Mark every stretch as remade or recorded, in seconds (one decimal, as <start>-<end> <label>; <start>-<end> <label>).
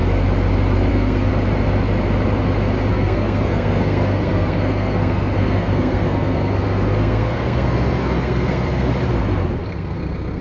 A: 0.0-0.9 recorded; 0.9-1.3 remade; 1.3-2.9 recorded; 2.9-8.9 remade; 8.9-9.6 recorded; 9.6-10.4 remade